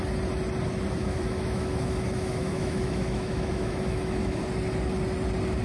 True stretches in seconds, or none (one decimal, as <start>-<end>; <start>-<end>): 0.0-1.0; 4.4-5.6